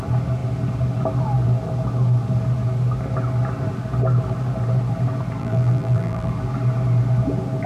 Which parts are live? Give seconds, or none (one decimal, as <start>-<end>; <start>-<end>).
0.0-5.4; 6.3-7.7